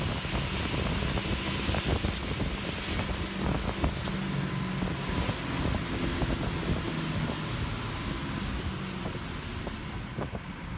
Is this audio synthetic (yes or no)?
no